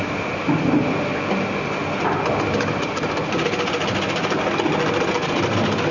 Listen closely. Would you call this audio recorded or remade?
recorded